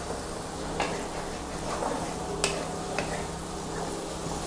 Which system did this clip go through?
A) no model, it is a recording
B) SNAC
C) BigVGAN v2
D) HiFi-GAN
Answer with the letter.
A